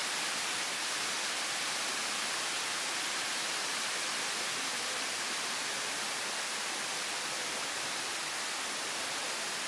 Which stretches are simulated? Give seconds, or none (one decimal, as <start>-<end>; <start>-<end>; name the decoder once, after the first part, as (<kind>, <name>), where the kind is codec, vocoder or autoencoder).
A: none